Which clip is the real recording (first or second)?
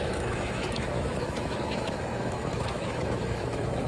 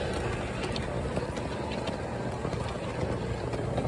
second